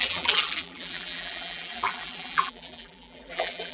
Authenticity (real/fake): fake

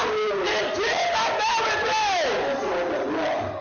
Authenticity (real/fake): real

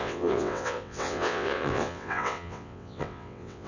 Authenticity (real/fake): fake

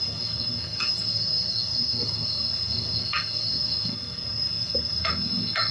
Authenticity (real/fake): fake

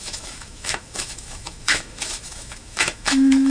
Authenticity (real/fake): fake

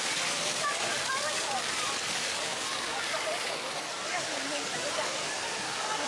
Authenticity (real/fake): fake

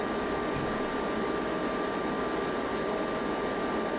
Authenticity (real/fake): real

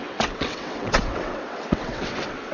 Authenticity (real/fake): fake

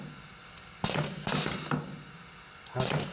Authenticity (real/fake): real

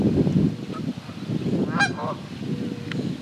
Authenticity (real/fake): real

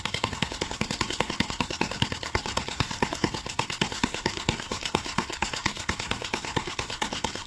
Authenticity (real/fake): fake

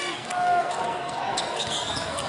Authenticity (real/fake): fake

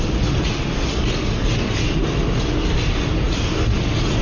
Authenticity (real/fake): real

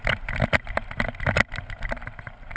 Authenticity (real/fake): fake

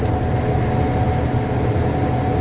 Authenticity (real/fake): real